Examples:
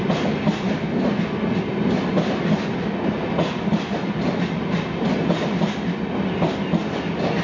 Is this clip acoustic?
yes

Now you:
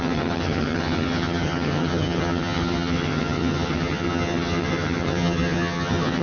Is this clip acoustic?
no